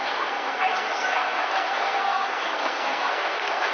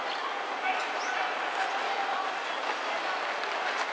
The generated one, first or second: first